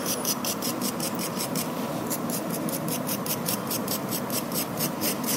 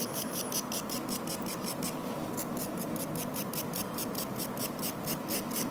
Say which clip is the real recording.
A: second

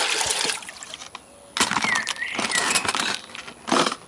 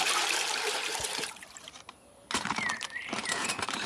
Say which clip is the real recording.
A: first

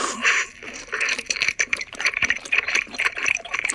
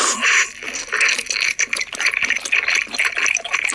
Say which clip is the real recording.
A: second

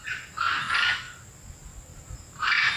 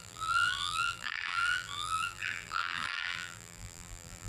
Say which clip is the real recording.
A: first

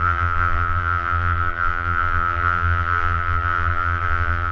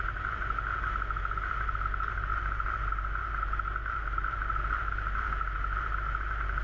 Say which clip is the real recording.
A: second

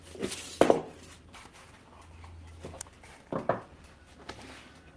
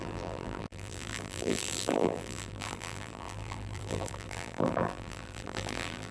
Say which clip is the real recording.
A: first